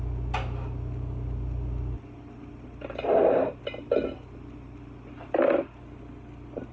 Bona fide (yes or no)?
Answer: yes